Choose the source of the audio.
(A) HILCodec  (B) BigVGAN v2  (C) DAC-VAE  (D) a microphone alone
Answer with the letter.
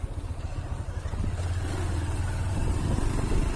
D